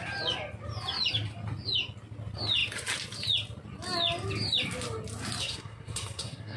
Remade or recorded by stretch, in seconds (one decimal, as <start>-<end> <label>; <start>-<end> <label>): 0.0-5.4 recorded; 5.4-6.6 remade